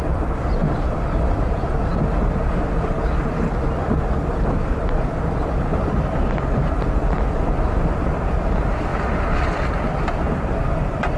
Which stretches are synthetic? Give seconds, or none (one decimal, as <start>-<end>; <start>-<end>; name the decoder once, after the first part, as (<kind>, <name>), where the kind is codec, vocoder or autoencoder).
none